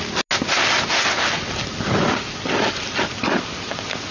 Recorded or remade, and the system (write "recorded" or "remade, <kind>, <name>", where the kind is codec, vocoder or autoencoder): recorded